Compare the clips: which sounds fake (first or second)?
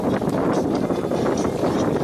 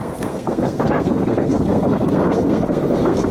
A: second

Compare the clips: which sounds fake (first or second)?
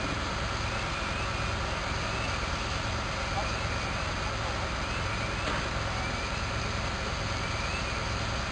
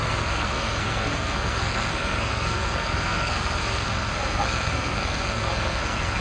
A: second